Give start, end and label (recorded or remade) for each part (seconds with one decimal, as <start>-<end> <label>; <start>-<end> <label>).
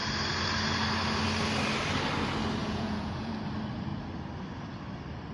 0.0-2.6 recorded; 2.6-3.3 remade; 3.3-5.3 recorded